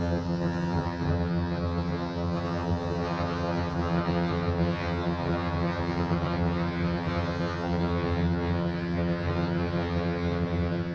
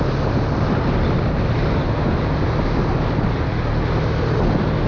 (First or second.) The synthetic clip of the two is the first